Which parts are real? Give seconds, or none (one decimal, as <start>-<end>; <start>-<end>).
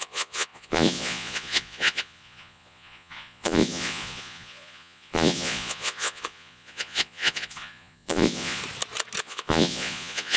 8.6-9.2